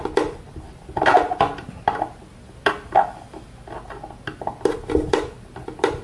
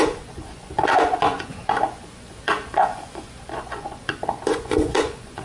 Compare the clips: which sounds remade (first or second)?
second